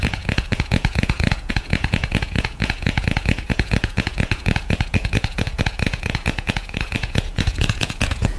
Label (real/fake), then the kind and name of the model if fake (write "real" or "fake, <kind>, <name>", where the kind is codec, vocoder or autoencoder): fake, vocoder, Vocos